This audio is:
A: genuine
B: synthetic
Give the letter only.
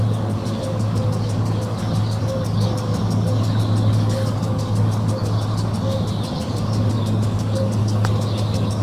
B